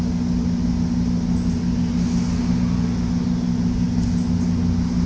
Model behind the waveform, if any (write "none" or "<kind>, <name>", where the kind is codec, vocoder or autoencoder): none